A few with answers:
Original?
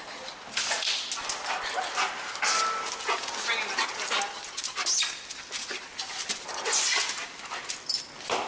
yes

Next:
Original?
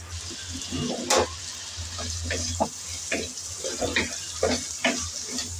yes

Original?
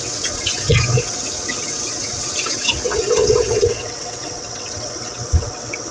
no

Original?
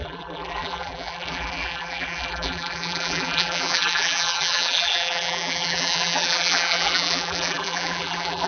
no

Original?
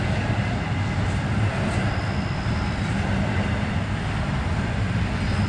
yes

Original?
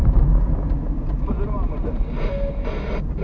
yes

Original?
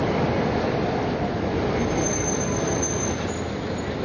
yes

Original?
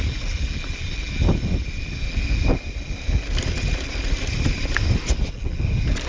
yes